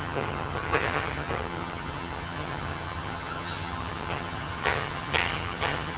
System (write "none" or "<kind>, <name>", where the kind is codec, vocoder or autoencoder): vocoder, HiFi-GAN